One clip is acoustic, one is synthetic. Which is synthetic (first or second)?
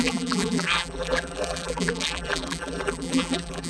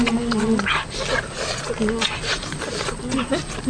first